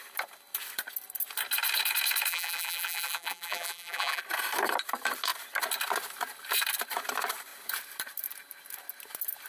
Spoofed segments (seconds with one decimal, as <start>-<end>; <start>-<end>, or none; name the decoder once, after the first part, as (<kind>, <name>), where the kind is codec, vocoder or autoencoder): 2.3-4.2 (vocoder, BigVGAN v2)